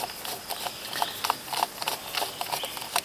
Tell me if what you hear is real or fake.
real